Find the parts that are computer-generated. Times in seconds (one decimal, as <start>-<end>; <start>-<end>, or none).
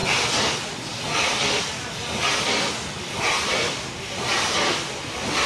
none